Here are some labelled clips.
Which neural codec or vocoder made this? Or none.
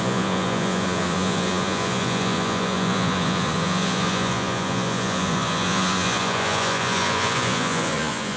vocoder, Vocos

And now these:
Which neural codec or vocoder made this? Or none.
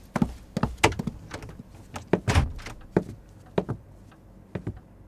none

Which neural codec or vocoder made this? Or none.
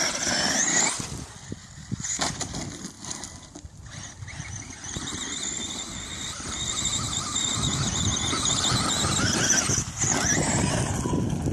none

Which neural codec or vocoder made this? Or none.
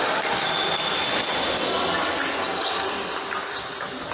none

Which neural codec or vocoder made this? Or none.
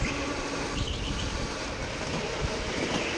none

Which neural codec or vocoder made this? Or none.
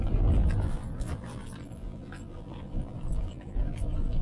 vocoder, BigVGAN v2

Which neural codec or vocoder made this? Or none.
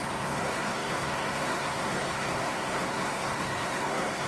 codec, SNAC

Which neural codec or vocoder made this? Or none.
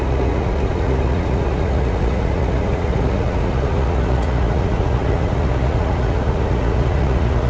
vocoder, Vocos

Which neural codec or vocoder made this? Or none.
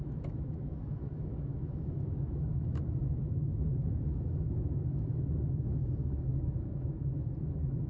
autoencoder, DAC-VAE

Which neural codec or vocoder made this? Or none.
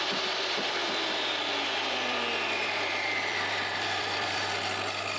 vocoder, BigVGAN v2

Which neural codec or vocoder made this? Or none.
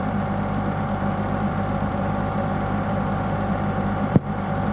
vocoder, BigVGAN v2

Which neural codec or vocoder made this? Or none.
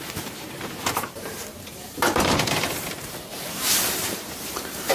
vocoder, BigVGAN v2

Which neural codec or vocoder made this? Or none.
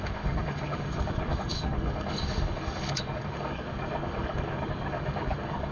codec, DAC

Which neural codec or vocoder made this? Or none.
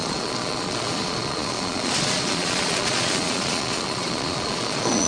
vocoder, Vocos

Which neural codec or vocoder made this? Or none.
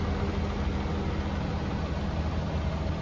none